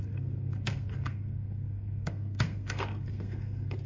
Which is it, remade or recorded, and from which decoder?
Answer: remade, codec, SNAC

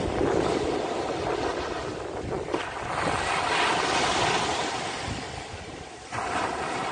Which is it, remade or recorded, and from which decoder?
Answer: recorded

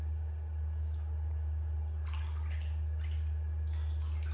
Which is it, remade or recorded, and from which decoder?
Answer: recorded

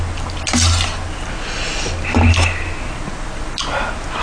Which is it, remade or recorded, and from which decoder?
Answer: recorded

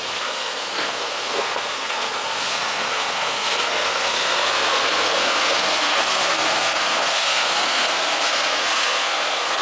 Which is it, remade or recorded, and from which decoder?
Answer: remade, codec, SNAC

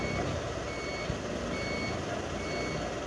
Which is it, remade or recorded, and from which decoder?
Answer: recorded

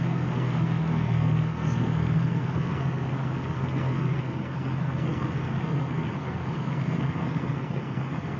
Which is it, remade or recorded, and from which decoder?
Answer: remade, codec, SNAC